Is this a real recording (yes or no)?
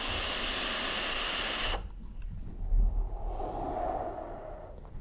yes